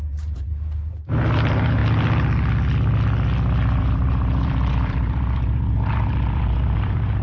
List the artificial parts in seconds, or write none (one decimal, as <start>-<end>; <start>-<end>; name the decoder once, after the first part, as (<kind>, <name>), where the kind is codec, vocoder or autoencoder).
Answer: 0.0-1.8 (vocoder, BigVGAN v2); 3.8-7.2